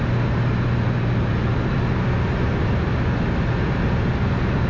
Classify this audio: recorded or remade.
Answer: recorded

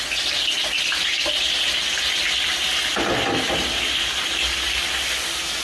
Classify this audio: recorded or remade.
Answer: recorded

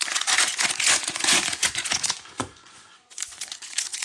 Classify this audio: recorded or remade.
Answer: remade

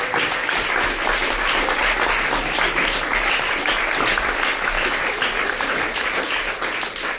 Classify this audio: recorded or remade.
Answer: recorded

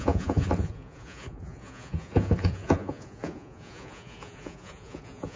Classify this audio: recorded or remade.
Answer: remade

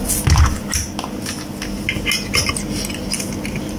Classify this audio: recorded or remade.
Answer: recorded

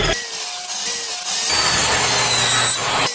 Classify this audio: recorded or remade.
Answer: recorded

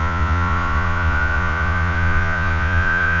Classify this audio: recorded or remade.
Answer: remade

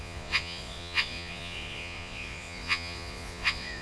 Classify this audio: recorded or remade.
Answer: remade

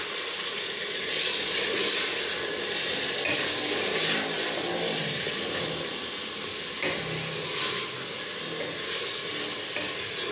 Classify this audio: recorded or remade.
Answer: recorded